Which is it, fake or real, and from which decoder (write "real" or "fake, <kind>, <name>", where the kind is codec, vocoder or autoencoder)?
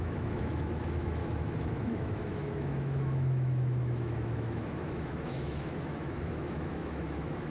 fake, autoencoder, DAC-VAE